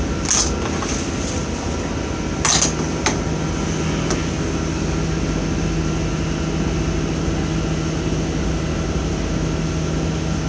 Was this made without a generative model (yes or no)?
yes